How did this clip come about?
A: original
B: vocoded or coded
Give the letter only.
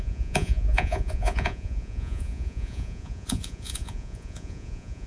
B